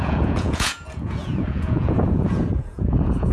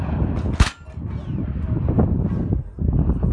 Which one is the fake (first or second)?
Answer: first